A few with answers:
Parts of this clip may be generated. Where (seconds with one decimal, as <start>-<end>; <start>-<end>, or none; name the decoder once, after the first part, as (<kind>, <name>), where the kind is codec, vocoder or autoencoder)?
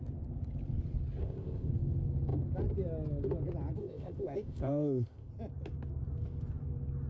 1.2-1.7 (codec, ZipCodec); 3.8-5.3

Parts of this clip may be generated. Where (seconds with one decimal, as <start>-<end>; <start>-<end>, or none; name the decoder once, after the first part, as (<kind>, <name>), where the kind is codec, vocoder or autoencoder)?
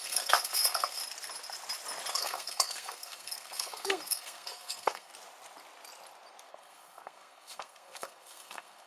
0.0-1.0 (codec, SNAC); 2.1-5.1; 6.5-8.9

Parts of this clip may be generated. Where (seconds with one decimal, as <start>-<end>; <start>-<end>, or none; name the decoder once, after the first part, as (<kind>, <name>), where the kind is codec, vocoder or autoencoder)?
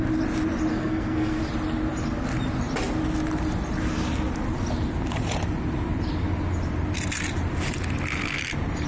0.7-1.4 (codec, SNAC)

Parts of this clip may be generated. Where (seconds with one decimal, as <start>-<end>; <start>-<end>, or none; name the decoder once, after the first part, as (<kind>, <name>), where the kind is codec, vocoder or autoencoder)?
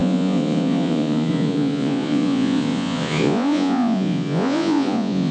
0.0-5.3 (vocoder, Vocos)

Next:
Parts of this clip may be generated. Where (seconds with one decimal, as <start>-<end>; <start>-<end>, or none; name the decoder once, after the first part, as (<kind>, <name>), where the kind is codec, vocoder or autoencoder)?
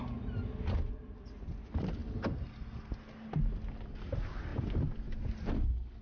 none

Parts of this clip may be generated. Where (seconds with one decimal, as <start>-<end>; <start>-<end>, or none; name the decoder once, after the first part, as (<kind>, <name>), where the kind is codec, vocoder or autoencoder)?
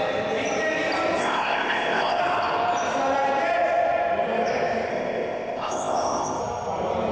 1.2-2.2 (codec, ZipCodec); 4.9-6.4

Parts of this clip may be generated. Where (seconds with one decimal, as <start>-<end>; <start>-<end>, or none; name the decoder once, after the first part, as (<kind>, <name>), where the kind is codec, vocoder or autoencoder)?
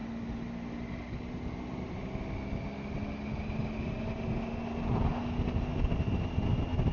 none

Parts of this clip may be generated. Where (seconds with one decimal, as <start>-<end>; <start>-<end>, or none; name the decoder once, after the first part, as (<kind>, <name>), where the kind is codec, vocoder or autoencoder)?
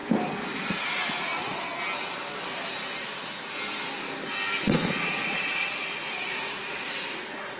0.5-1.3 (vocoder, Vocos); 4.6-7.6